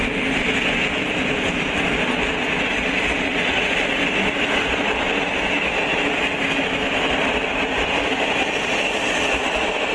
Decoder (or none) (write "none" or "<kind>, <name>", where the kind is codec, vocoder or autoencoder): none